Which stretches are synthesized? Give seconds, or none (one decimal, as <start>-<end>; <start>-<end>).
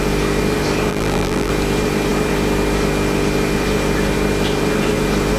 0.9-1.5